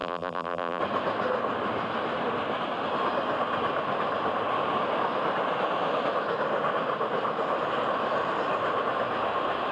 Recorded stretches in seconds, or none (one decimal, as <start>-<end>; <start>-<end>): 0.8-9.7